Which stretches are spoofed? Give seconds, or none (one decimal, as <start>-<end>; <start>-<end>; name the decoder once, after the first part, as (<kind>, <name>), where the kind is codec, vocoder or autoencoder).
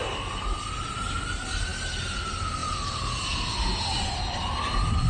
none